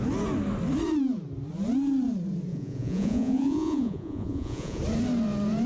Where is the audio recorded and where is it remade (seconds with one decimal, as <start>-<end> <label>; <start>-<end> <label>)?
0.0-2.5 recorded; 2.5-4.8 remade; 4.8-5.7 recorded